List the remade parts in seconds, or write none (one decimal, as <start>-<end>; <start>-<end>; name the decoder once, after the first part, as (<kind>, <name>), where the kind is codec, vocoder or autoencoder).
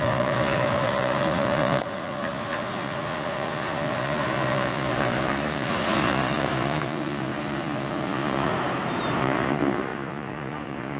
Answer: 0.0-8.5 (vocoder, Vocos); 9.2-11.0